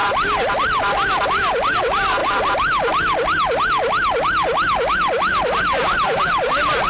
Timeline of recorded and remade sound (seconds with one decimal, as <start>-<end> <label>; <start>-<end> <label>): 0.0-2.2 recorded; 2.2-2.9 remade; 2.9-5.3 recorded; 5.3-6.5 remade; 6.5-6.9 recorded